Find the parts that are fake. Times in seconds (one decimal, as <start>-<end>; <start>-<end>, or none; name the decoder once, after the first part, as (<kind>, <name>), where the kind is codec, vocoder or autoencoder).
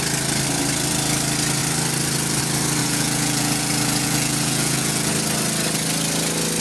2.8-5.1 (vocoder, Vocos)